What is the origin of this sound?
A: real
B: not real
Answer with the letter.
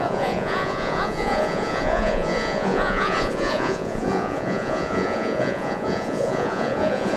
B